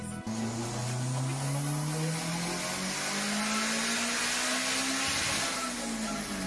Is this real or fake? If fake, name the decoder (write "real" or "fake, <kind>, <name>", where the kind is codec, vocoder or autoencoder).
real